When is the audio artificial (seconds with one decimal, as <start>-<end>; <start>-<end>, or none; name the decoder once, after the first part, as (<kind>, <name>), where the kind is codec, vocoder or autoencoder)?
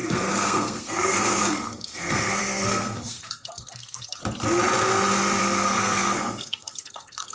0.0-4.2 (codec, SNAC); 5.4-7.3